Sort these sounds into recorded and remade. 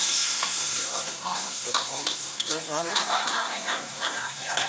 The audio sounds remade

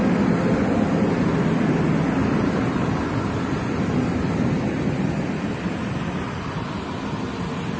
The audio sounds recorded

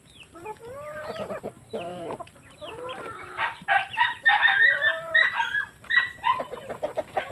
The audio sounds remade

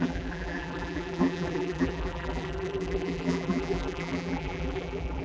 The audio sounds remade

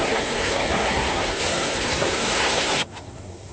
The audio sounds remade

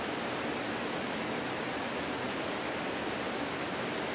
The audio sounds recorded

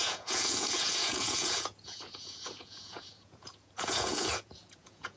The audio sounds remade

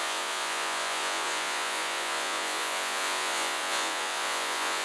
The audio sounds remade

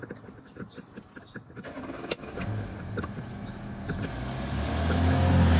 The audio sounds recorded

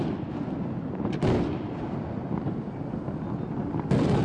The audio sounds recorded